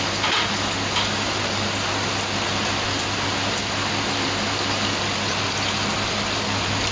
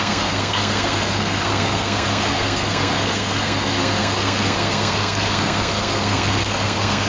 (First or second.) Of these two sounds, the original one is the first